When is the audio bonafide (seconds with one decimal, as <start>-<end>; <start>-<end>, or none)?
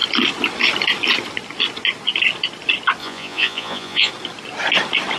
0.0-3.0; 4.1-5.2